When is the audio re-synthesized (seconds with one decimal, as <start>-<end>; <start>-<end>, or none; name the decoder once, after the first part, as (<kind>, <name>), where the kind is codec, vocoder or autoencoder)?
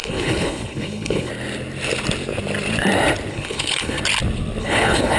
0.0-1.3 (codec, HILCodec); 3.3-4.0; 4.6-5.2